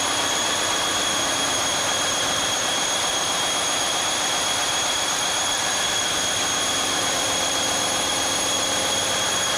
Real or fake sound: fake